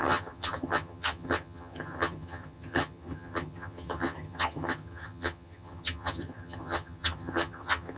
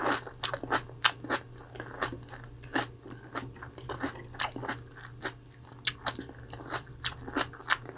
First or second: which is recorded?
second